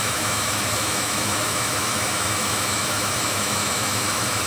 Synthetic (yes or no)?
yes